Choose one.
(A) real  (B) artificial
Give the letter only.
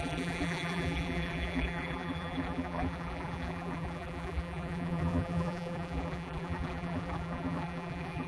B